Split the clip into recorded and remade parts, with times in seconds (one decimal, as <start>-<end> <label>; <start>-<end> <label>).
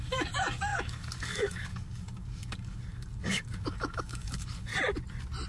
0.0-4.7 remade; 4.7-5.5 recorded